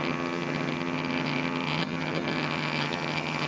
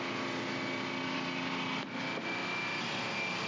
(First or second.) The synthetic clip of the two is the first